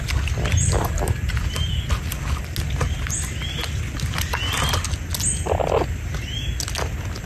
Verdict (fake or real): real